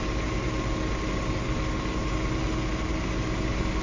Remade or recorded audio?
recorded